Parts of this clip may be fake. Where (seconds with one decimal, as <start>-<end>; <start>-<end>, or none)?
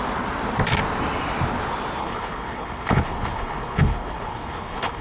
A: 2.0-5.0